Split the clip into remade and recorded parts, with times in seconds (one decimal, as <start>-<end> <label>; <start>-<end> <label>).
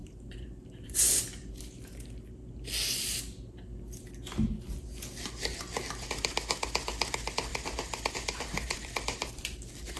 0.0-1.6 remade; 1.6-10.0 recorded